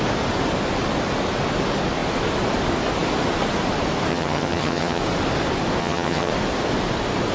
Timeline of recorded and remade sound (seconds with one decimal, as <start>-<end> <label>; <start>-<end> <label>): 0.0-4.1 recorded; 4.1-5.0 remade; 5.0-5.8 recorded; 5.8-6.3 remade; 6.3-7.3 recorded